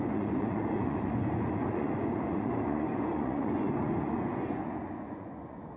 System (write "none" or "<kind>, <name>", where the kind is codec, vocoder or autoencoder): vocoder, Vocos